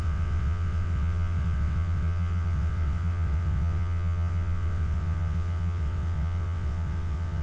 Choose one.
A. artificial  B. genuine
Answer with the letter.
A